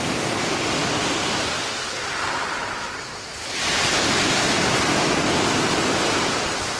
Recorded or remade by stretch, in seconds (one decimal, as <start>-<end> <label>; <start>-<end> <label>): 0.0-6.8 recorded